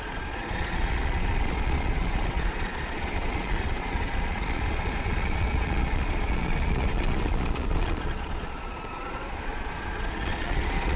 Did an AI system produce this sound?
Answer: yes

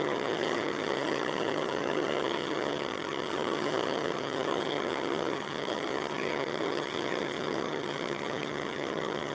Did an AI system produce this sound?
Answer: yes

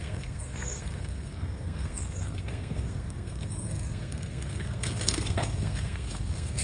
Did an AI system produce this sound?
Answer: yes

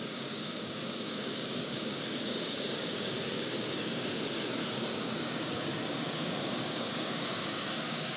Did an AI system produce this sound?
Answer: yes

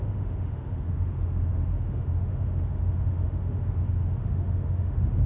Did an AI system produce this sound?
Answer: yes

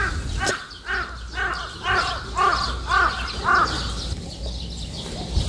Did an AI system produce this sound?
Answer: no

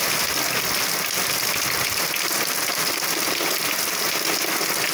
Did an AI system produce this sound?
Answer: no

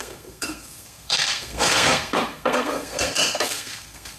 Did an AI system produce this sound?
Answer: yes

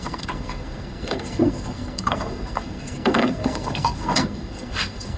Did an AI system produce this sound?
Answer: yes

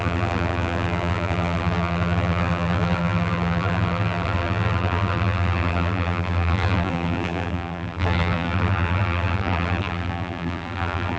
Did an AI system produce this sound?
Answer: yes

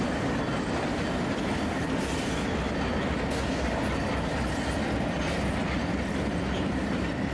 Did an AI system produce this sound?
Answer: no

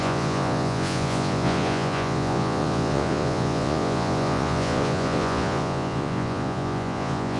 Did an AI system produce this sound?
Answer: yes